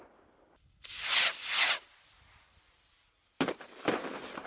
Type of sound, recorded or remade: recorded